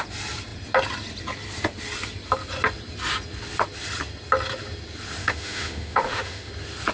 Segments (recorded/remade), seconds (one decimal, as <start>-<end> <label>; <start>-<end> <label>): 0.0-5.2 recorded; 5.2-6.5 remade; 6.5-6.9 recorded